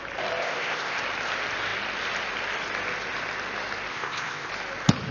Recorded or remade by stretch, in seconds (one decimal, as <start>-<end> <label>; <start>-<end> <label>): 0.0-0.4 recorded; 0.4-1.0 remade; 1.0-3.9 recorded; 3.9-4.5 remade; 4.5-5.1 recorded